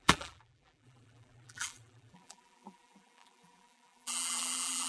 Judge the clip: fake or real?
fake